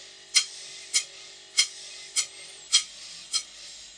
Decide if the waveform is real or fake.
real